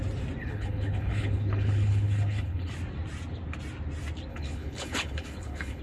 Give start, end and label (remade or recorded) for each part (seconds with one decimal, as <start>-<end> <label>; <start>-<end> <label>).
0.0-0.4 recorded; 0.4-2.7 remade; 2.7-4.3 recorded; 4.3-5.8 remade